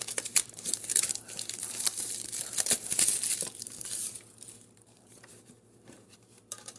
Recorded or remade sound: remade